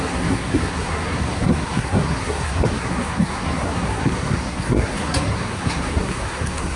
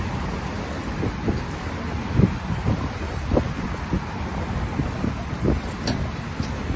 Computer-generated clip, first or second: first